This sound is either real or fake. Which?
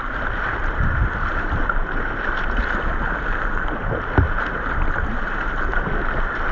real